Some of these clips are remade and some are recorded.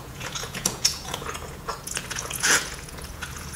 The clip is remade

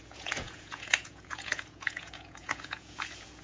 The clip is remade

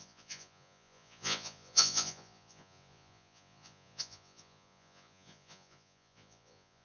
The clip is remade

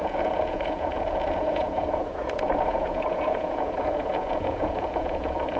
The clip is remade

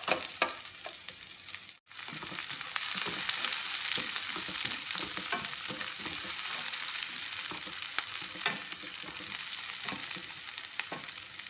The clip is recorded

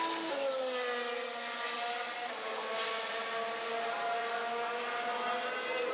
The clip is recorded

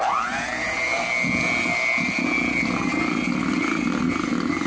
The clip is recorded